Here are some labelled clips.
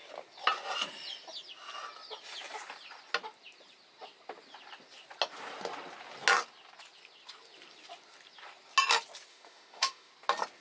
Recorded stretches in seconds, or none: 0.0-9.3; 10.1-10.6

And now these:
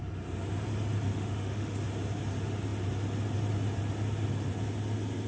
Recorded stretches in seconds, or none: 0.0-1.1; 1.8-5.3

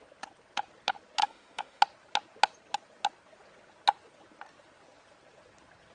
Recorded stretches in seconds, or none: 0.0-1.2; 1.8-5.9

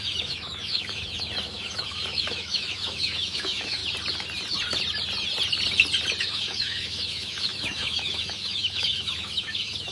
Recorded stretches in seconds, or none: 3.8-6.2

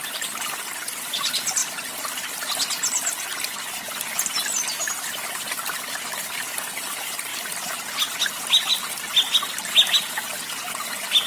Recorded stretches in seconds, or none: 0.0-11.3

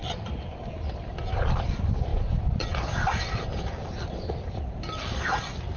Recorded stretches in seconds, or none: 0.0-5.8